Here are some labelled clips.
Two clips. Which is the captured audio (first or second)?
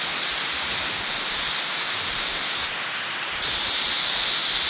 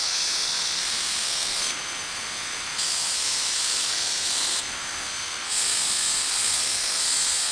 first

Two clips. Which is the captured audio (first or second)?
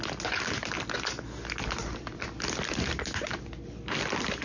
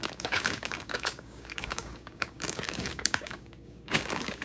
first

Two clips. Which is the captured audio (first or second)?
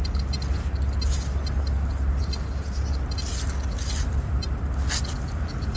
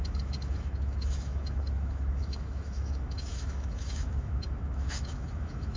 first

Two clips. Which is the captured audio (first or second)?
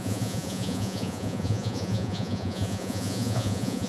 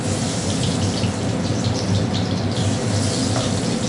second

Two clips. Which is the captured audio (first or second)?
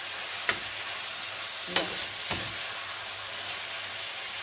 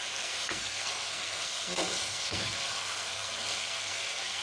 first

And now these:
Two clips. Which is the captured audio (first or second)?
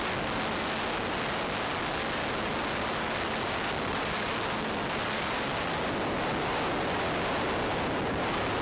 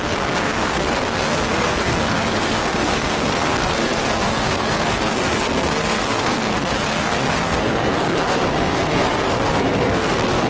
first